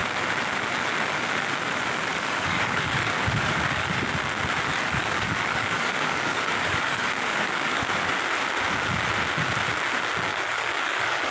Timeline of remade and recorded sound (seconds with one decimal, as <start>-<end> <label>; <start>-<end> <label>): 0.0-2.1 recorded; 2.1-4.0 remade; 4.0-4.7 recorded; 4.7-8.1 remade; 8.1-10.3 recorded; 10.3-11.3 remade